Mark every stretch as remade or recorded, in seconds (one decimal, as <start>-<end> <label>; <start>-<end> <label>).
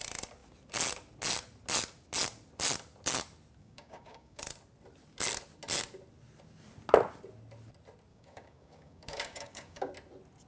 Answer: 0.0-3.6 recorded; 3.6-4.4 remade; 4.4-8.1 recorded; 8.1-9.9 remade; 9.9-10.5 recorded